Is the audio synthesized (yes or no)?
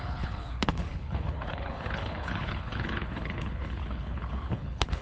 yes